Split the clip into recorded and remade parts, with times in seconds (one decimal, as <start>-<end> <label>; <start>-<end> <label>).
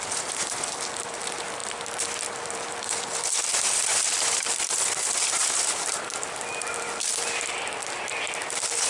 0.0-8.9 remade